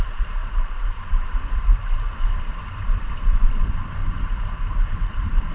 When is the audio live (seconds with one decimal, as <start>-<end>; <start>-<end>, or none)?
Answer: 0.4-1.0; 4.0-5.1